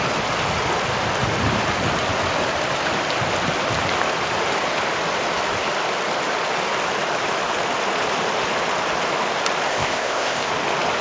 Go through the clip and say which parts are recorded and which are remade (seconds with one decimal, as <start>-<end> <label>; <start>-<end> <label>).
0.0-9.7 recorded; 9.7-10.5 remade; 10.5-11.0 recorded